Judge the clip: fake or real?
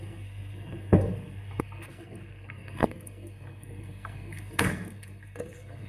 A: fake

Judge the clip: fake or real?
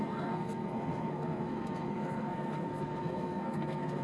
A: fake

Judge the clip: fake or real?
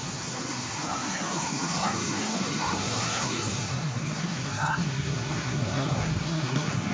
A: fake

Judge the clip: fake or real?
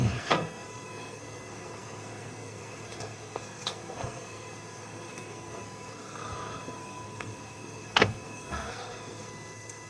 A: fake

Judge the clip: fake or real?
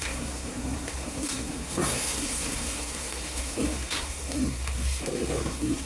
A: fake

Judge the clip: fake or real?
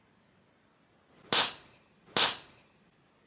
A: real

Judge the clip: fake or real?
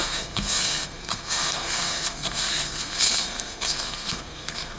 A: fake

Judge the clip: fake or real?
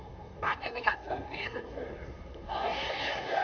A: fake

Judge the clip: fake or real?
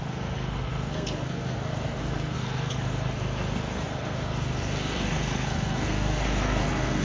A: fake